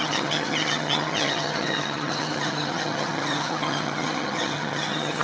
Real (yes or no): no